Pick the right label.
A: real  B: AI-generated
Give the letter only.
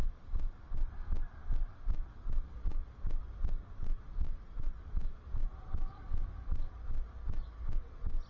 A